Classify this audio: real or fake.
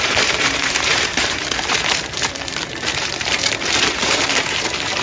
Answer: fake